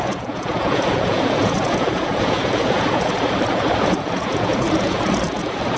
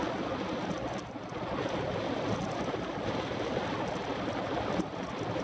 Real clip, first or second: second